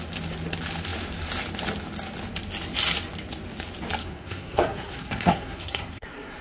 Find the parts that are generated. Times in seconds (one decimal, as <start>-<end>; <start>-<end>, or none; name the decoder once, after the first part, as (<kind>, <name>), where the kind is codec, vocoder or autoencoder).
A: 4.0-6.4 (codec, SNAC)